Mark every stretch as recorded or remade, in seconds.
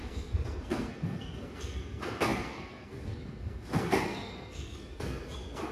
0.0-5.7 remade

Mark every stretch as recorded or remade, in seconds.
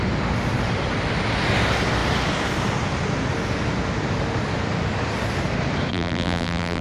0.0-5.9 recorded; 5.9-6.8 remade